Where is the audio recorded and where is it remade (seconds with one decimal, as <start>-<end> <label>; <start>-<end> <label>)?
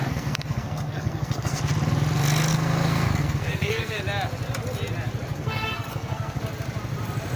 0.0-1.6 remade; 1.6-2.5 recorded; 2.5-4.0 remade; 4.0-5.3 recorded; 5.3-6.4 remade; 6.4-7.4 recorded